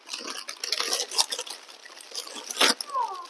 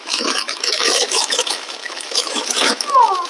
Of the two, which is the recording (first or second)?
first